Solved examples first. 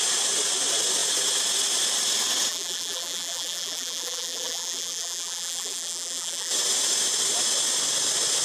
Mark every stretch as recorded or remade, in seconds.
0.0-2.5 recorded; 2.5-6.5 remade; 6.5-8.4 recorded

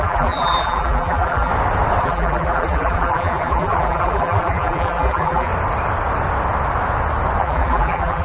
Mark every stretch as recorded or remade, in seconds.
0.0-1.5 remade; 1.5-2.0 recorded; 2.0-5.5 remade; 5.5-7.4 recorded; 7.4-8.2 remade

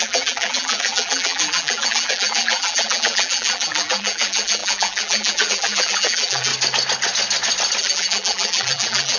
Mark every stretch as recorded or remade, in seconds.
0.0-6.5 remade; 6.5-7.8 recorded; 7.8-9.2 remade